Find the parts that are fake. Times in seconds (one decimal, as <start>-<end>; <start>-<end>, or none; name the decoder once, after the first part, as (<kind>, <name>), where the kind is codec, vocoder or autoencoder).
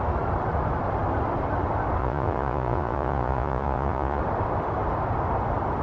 2.0-4.2 (vocoder, Vocos)